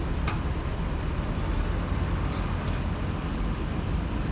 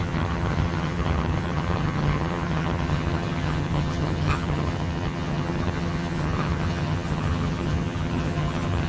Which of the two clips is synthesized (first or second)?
second